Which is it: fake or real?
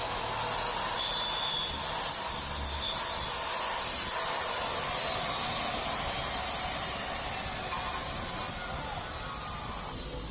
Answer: real